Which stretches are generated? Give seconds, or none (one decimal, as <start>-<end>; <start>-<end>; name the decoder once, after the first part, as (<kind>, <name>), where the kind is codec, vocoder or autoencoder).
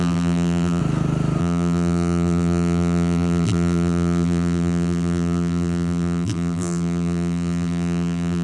0.0-0.8 (vocoder, BigVGAN v2); 1.4-8.4